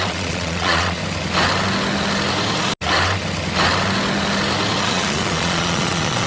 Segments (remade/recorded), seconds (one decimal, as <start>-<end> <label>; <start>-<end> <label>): 0.0-1.0 remade; 1.0-4.8 recorded; 4.8-6.3 remade